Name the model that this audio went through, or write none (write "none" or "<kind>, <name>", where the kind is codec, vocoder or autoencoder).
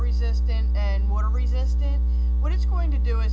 none